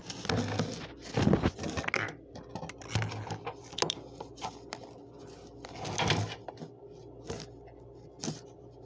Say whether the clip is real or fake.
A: real